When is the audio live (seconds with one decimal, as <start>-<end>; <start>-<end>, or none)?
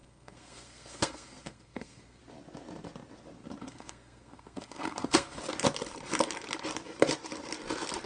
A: 2.2-3.6; 5.4-8.1